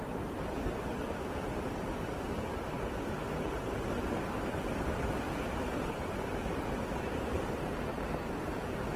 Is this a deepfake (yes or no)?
no